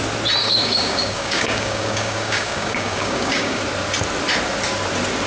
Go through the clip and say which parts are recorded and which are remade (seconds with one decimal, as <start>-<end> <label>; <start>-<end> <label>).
0.0-0.4 recorded; 0.4-3.6 remade; 3.6-5.3 recorded